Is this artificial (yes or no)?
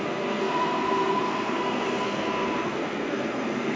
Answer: yes